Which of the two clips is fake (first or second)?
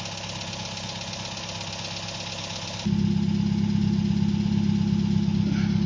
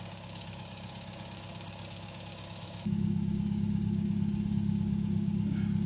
second